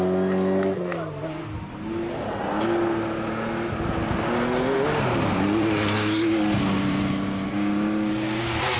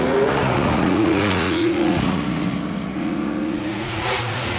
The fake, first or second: second